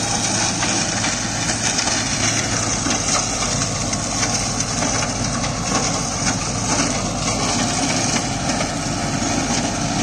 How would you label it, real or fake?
real